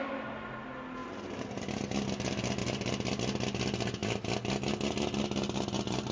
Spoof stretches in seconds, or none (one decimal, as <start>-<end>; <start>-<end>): 1.0-1.7; 2.6-3.2